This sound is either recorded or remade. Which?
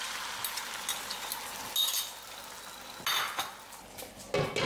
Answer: recorded